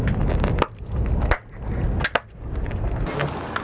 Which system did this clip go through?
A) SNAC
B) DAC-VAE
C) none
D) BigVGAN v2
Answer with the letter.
C